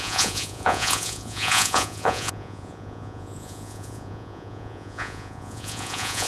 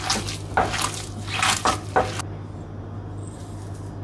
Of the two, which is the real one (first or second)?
second